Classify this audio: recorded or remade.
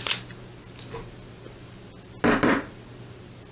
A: recorded